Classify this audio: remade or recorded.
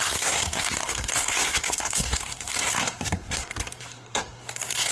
remade